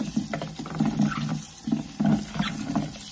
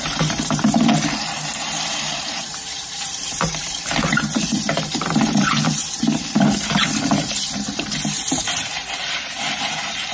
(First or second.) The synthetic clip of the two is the second